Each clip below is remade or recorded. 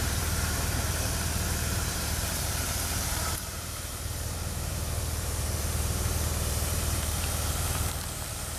remade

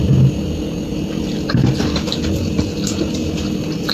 remade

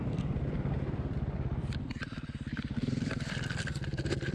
remade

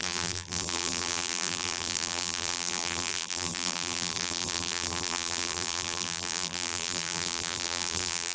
remade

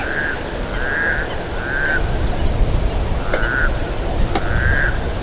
recorded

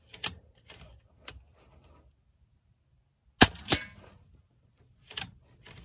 recorded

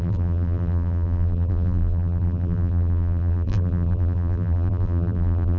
remade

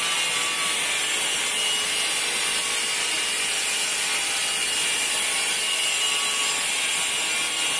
recorded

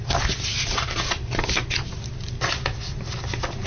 recorded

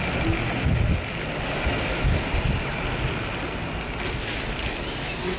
recorded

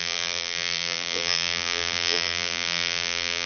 remade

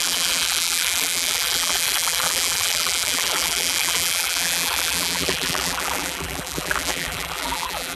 remade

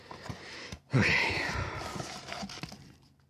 recorded